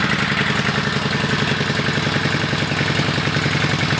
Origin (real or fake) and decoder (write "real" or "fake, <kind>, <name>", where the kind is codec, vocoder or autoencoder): real